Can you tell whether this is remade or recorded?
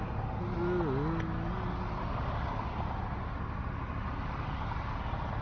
recorded